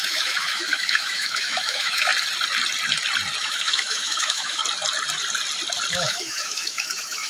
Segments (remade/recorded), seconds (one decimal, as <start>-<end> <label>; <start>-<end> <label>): 0.0-2.1 remade; 2.1-3.4 recorded; 3.4-4.6 remade; 4.6-5.9 recorded; 5.9-7.3 remade